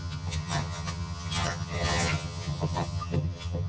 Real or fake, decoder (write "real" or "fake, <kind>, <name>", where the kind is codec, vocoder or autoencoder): fake, vocoder, HiFi-GAN